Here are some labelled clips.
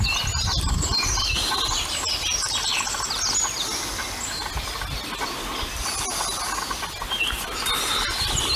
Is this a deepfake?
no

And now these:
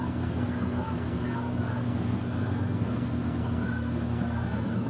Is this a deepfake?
yes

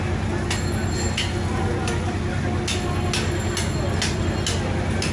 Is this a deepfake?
no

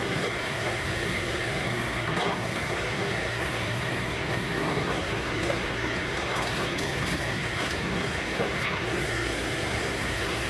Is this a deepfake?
yes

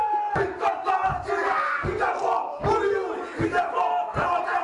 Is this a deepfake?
no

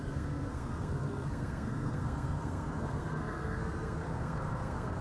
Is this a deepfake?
yes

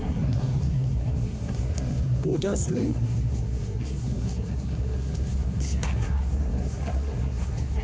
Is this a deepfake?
yes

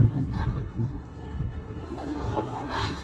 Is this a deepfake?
yes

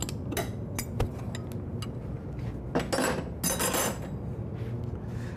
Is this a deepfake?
no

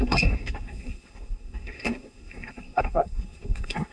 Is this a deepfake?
yes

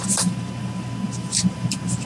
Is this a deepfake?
no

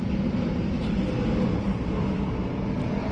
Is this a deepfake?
no